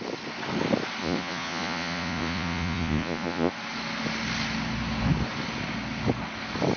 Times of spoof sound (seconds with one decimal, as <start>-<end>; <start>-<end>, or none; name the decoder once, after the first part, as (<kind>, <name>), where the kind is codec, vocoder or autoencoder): 1.0-3.5 (vocoder, Vocos)

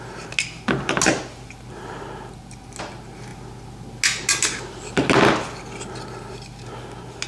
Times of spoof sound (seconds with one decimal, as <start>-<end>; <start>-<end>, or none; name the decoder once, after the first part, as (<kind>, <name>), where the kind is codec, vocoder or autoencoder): none